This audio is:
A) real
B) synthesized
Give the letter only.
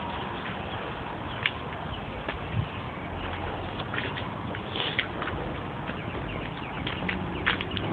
A